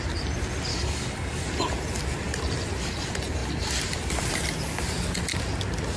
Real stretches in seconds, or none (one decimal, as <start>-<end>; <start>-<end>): 0.0-0.7; 1.4-6.0